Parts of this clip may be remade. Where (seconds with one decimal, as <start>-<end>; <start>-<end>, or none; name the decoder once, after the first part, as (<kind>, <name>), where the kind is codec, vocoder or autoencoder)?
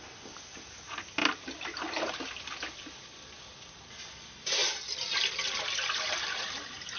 none